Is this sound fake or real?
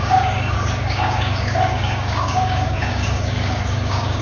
fake